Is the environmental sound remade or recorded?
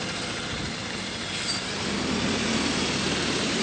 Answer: recorded